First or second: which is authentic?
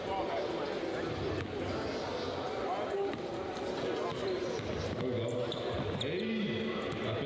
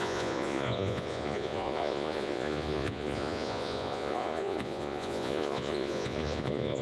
first